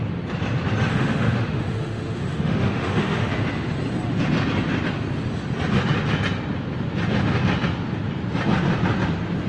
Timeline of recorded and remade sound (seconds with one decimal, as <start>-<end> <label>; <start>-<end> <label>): 0.0-0.9 recorded; 0.9-3.3 remade; 3.3-9.5 recorded